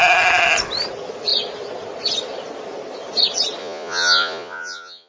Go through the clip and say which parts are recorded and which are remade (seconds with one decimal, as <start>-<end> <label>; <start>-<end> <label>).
0.0-3.6 recorded; 3.6-5.1 remade